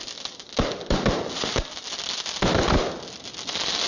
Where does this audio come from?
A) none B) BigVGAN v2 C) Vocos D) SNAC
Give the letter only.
A